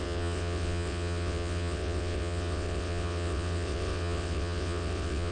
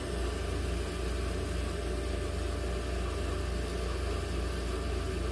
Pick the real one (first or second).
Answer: second